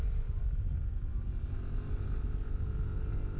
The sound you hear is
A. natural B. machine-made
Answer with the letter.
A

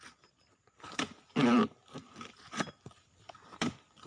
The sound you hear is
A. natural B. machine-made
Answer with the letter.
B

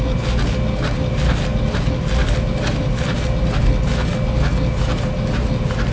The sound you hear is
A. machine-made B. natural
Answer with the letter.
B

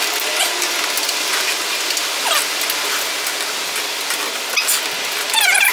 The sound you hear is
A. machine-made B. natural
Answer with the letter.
B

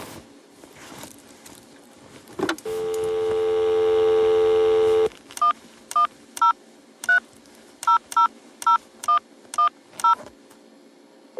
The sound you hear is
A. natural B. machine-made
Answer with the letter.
A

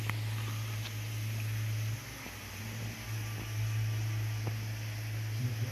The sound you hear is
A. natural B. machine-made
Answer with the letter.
A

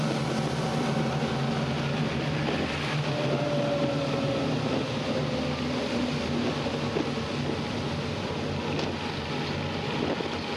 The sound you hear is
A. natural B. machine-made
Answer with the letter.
A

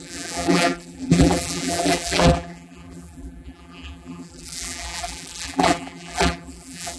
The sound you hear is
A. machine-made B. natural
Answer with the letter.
A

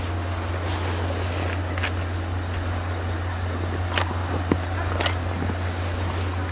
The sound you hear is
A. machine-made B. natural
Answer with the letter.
B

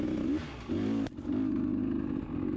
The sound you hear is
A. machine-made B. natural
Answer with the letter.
B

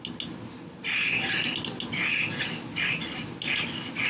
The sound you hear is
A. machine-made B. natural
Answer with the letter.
B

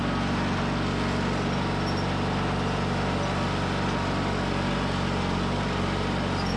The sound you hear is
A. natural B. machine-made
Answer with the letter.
A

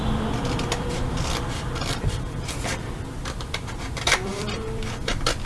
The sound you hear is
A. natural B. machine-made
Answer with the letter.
B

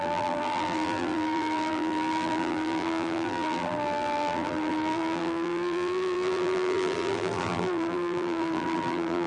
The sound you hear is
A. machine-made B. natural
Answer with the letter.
A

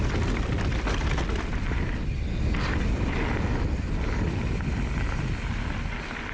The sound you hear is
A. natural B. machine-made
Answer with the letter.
A